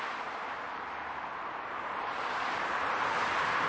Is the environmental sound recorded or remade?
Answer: remade